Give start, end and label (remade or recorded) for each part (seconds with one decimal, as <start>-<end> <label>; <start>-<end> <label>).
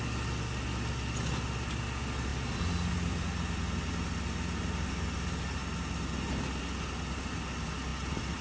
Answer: 0.0-8.4 recorded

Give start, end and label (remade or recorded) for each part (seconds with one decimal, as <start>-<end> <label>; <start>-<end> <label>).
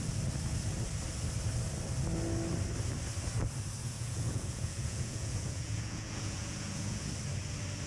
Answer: 0.0-3.8 recorded; 3.8-7.1 remade; 7.1-7.9 recorded